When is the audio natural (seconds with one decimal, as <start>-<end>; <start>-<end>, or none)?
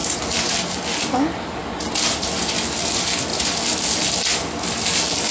0.0-5.3